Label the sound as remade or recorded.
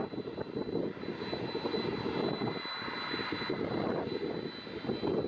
recorded